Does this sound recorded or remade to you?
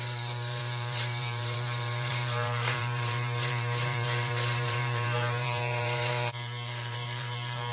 remade